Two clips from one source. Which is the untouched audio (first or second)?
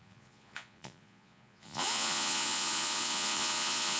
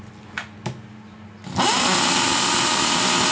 second